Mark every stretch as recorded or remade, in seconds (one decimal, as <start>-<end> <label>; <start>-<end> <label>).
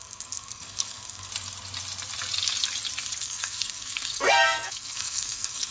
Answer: 0.0-1.3 remade; 1.3-3.2 recorded; 3.2-5.7 remade